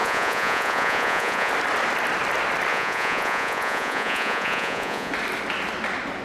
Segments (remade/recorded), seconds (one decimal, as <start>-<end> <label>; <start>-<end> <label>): 0.0-1.5 remade; 1.5-2.7 recorded; 2.7-5.1 remade; 5.1-6.2 recorded